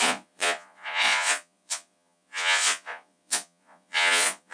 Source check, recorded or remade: remade